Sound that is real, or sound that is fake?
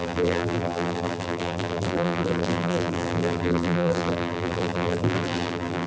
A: fake